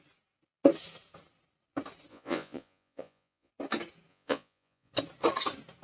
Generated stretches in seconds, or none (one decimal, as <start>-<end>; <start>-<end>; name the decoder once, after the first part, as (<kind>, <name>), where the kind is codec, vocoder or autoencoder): 2.1-3.5 (vocoder, Vocos); 4.1-4.9